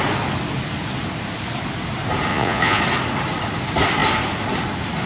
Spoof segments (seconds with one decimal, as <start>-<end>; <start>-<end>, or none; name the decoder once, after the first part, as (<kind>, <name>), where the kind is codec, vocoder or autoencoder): 2.3-2.8 (vocoder, Vocos)

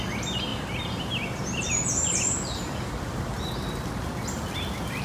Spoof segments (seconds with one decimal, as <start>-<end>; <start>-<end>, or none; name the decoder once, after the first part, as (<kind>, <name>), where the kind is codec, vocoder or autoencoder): 0.5-3.5 (vocoder, BigVGAN v2)

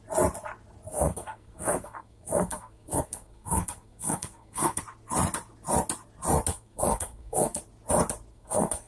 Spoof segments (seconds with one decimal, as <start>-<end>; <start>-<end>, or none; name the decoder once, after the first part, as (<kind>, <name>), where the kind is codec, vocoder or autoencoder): 0.9-4.8 (codec, SNAC); 6.5-7.6; 8.3-8.9

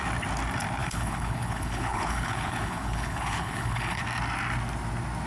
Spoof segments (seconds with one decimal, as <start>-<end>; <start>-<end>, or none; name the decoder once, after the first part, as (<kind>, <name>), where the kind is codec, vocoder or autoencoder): 0.8-4.0 (codec, HILCodec)